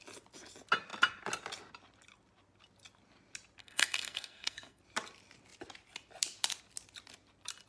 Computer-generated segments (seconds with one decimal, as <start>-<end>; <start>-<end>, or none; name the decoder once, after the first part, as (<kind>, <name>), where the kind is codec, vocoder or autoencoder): 3.6-4.8 (codec, SNAC)